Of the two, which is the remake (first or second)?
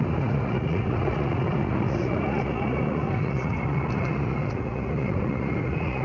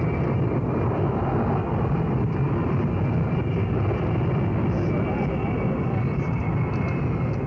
first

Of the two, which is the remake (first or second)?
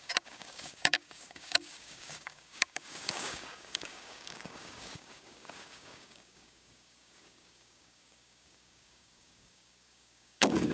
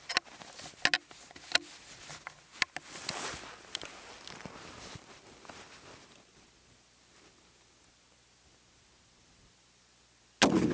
first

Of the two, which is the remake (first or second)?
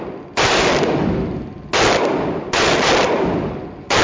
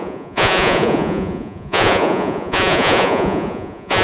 second